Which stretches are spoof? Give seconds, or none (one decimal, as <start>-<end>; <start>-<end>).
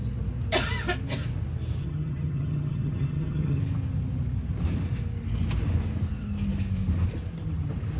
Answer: 1.8-3.6